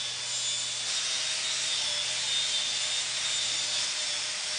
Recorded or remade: recorded